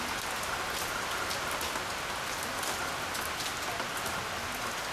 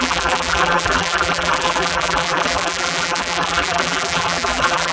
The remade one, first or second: second